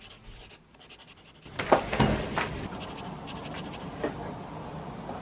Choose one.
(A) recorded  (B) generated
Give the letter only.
A